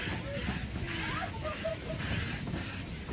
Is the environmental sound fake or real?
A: real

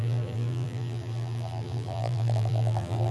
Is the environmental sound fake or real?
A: fake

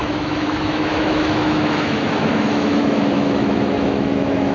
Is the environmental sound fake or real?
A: fake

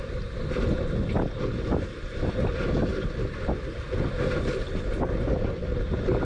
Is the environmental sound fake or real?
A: real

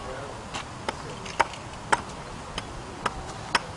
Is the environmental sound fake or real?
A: real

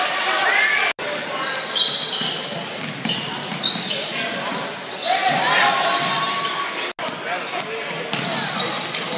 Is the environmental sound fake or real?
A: real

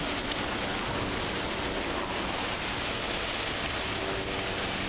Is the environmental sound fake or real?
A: real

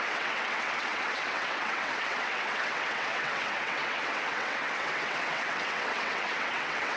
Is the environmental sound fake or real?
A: fake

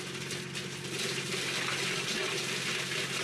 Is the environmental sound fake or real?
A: real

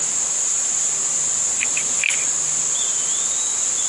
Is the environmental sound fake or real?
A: real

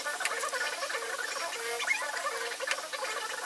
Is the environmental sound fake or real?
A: real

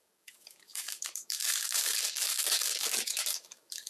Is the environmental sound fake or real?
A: fake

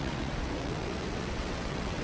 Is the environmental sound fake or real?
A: fake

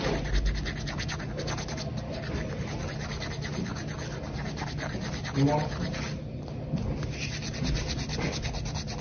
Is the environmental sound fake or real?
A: real